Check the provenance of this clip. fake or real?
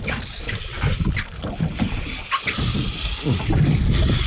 fake